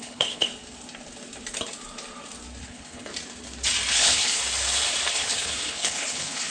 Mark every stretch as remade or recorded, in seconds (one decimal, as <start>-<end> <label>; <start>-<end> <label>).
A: 0.0-0.5 remade; 0.5-2.6 recorded; 2.6-3.1 remade; 3.1-3.9 recorded; 3.9-4.4 remade; 4.4-5.1 recorded; 5.1-6.5 remade